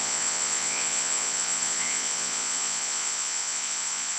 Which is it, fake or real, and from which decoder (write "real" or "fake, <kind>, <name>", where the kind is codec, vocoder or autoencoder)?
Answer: fake, vocoder, Vocos